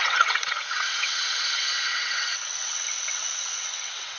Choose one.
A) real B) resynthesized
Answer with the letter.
B